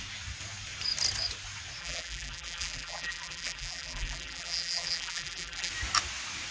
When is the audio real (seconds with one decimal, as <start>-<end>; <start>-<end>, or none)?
0.0-1.8; 5.7-6.5